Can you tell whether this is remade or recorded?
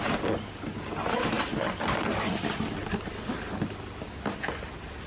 recorded